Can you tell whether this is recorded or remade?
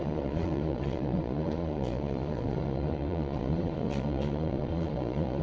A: remade